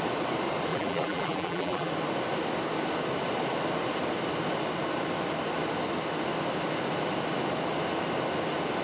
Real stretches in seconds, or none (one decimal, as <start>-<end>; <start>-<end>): 0.0-0.7; 1.9-8.8